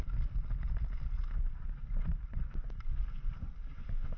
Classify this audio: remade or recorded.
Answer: recorded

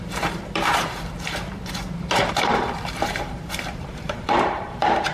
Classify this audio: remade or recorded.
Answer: remade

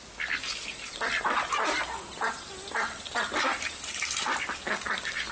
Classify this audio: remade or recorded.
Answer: recorded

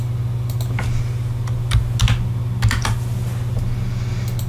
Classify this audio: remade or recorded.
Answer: recorded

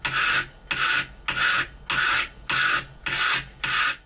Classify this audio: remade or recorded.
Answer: recorded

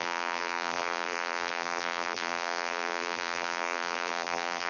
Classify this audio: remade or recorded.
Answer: remade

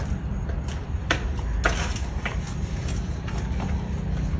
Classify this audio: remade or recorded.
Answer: recorded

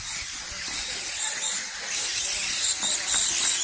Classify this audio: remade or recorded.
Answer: recorded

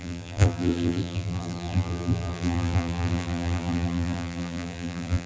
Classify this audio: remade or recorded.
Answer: remade